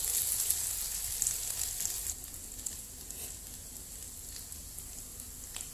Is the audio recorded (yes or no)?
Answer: yes